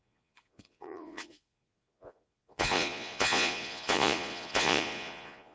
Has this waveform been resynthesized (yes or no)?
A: yes